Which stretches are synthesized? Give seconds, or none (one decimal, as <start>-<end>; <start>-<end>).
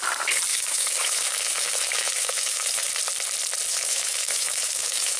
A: 0.5-2.9; 3.7-5.2